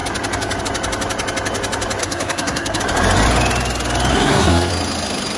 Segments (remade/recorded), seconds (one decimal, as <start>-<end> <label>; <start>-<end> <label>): 0.0-2.0 recorded; 2.0-2.8 remade; 2.8-4.1 recorded; 4.1-4.7 remade; 4.7-5.4 recorded